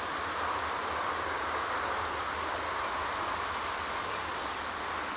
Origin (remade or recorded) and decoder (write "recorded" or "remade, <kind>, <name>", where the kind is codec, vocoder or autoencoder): recorded